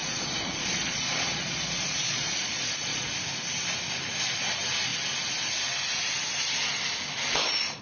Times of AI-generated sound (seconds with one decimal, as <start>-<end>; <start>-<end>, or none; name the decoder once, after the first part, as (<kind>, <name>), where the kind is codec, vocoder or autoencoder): 0.0-3.1 (vocoder, Vocos)